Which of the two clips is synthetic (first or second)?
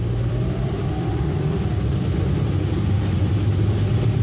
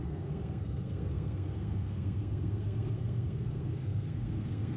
second